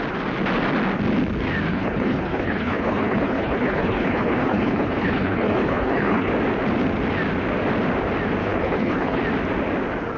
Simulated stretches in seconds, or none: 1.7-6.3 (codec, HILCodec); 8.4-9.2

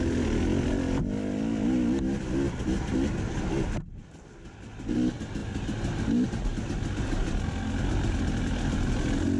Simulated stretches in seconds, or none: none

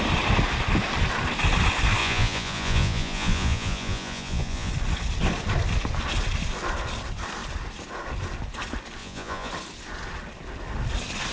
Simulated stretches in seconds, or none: 2.0-4.7 (vocoder, Vocos); 9.0-9.5